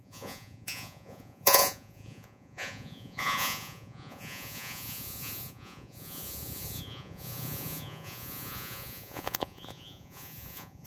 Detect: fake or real fake